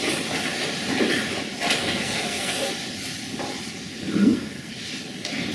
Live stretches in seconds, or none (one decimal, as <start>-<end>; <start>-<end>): 0.0-1.8; 2.7-4.2; 4.7-5.5